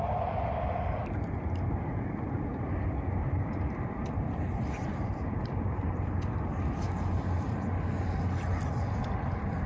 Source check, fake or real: real